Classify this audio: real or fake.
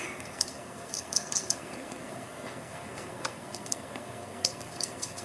fake